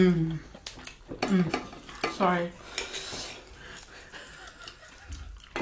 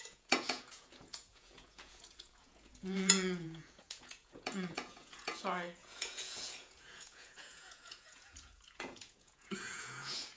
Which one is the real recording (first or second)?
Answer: first